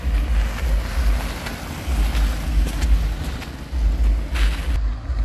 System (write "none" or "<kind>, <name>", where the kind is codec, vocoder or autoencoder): none